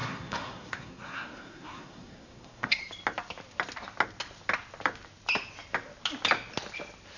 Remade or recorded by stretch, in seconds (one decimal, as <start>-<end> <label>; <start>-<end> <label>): 0.0-2.8 remade; 2.8-7.2 recorded